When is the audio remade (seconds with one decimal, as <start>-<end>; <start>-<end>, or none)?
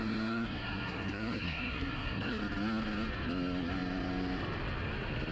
0.0-2.4